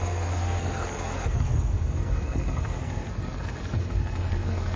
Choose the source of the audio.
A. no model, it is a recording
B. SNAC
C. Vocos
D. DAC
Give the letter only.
B